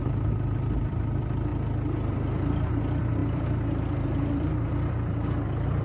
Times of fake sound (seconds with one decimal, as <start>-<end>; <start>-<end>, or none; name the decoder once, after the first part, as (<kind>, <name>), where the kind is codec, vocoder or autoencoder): 0.0-1.5 (vocoder, BigVGAN v2); 2.1-5.8